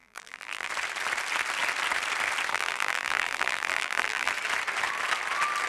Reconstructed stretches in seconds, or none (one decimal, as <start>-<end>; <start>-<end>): 0.0-0.7; 2.5-4.3